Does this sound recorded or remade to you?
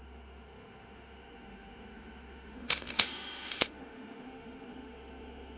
remade